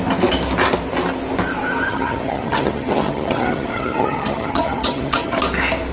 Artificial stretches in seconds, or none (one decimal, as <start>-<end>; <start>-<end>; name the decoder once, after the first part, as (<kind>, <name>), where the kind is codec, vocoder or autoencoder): 1.9-5.4 (vocoder, HiFi-GAN)